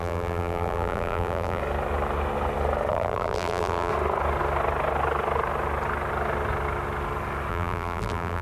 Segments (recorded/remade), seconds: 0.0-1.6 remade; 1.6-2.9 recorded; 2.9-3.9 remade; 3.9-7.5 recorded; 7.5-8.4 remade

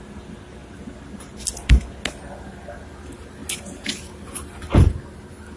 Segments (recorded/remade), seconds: 0.0-5.6 recorded

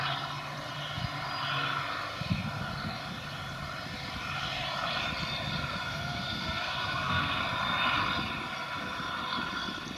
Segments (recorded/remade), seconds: 0.0-5.7 recorded; 5.7-7.4 remade; 7.4-10.0 recorded

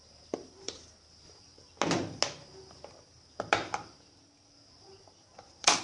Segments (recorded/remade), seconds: 0.0-1.5 remade; 1.5-5.0 recorded; 5.0-5.8 remade

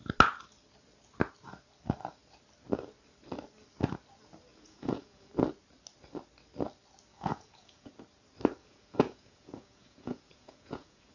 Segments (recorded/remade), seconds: 0.0-4.5 recorded; 4.5-5.3 remade; 5.3-7.1 recorded; 7.1-7.9 remade; 7.9-8.6 recorded; 8.6-11.1 remade